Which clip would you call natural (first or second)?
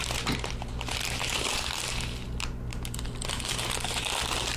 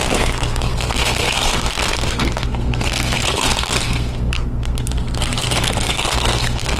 first